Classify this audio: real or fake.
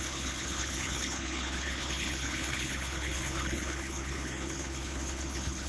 fake